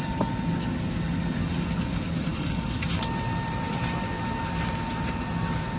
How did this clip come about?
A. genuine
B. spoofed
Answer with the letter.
A